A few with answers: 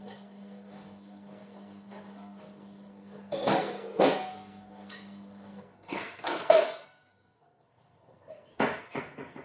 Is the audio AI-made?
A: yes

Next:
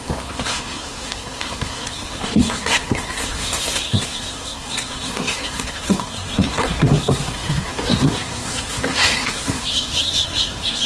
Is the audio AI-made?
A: yes